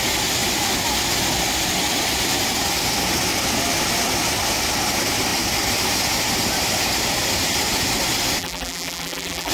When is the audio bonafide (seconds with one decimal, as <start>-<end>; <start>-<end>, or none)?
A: 0.0-8.4